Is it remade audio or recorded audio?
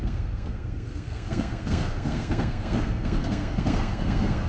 remade